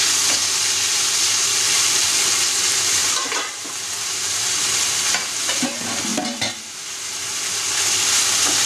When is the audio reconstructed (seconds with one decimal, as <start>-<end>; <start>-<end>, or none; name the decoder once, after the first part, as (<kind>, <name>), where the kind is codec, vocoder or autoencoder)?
1.5-2.1 (vocoder, BigVGAN v2); 3.0-3.5